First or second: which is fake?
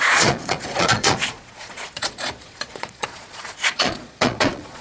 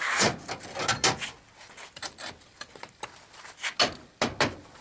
first